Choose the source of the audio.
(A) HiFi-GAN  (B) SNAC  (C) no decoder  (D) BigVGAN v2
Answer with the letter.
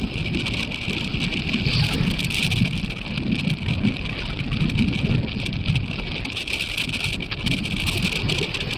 C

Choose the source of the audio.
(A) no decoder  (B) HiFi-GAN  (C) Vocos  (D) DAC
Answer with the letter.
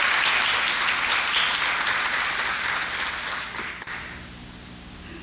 A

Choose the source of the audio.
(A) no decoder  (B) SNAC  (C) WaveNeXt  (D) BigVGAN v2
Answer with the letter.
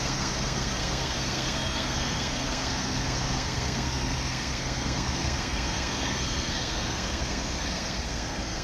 B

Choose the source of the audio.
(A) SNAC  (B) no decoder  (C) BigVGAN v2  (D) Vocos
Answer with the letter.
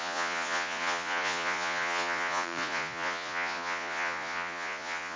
D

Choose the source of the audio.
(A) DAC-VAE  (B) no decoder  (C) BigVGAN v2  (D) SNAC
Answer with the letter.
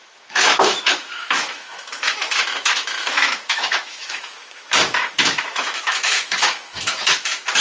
A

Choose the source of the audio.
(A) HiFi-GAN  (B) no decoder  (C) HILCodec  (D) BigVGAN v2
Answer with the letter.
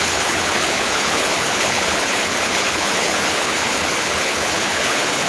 C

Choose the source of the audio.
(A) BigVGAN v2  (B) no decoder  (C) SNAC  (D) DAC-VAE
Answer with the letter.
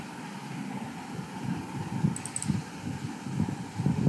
B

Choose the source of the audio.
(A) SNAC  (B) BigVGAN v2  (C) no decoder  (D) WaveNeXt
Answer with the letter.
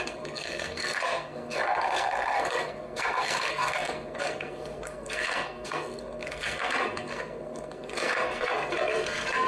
A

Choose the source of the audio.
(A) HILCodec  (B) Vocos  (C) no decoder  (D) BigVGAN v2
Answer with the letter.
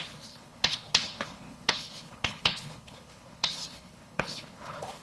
A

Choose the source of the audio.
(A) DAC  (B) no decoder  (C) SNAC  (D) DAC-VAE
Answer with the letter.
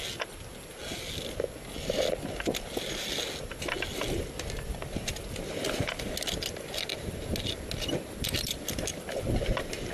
B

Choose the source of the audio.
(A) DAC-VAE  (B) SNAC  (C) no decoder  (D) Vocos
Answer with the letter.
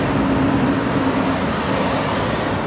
C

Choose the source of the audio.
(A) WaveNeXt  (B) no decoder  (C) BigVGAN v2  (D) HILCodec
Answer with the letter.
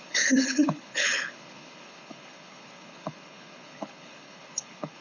D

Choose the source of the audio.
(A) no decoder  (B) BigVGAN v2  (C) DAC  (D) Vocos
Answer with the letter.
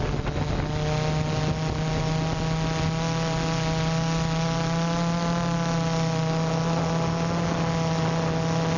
A